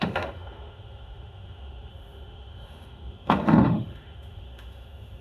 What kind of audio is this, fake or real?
fake